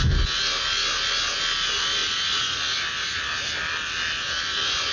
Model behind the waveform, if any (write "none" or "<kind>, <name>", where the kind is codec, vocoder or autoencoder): none